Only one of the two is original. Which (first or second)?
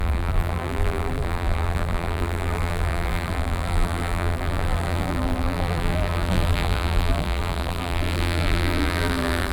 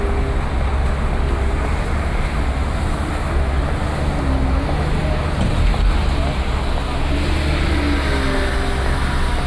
second